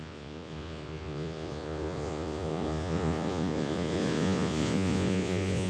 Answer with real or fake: fake